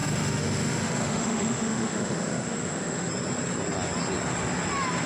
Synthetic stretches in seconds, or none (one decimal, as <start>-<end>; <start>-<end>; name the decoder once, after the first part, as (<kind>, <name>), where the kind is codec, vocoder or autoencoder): 0.0-3.1 (autoencoder, DAC-VAE)